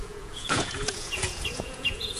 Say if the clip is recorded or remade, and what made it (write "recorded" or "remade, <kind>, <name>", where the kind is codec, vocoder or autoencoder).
remade, vocoder, Vocos